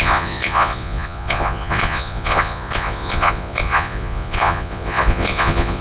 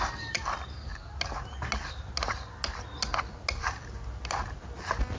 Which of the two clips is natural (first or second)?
second